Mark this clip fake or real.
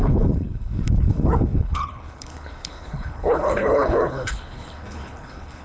fake